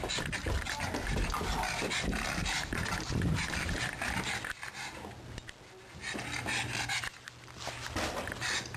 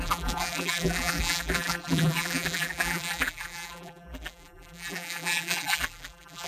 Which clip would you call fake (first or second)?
second